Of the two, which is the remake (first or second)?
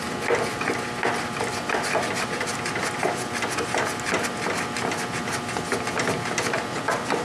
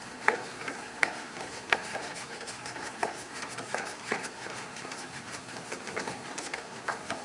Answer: second